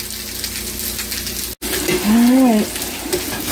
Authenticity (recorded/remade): recorded